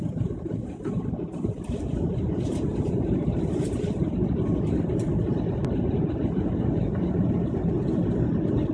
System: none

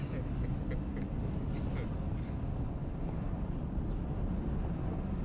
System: none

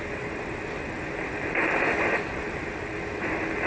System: none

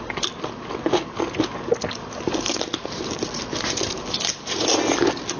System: none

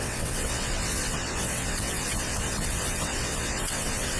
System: vocoder, WaveNeXt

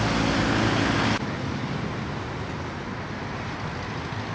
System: none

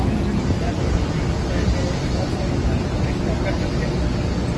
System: none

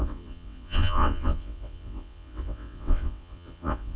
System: vocoder, WaveNeXt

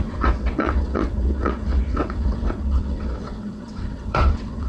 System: vocoder, WaveNeXt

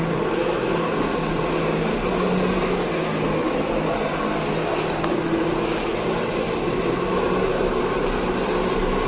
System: none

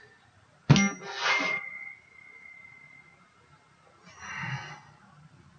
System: none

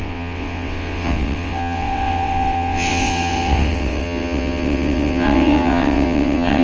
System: vocoder, WaveNeXt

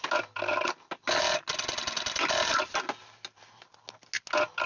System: none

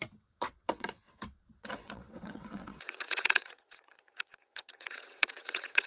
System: vocoder, WaveNeXt